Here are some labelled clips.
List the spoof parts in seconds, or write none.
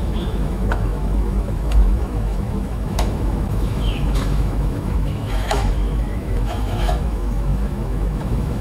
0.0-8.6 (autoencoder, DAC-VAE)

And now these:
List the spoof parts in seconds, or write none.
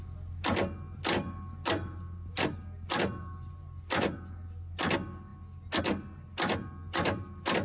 none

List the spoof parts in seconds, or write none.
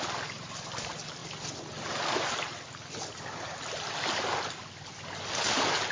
none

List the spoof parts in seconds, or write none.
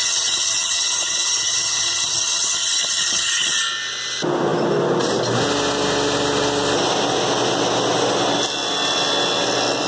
0.0-3.5 (vocoder, HiFi-GAN)